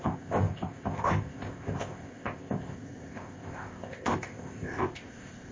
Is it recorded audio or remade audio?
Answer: remade